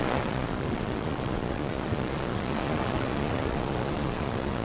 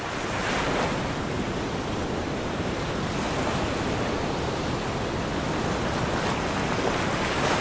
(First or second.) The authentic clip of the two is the second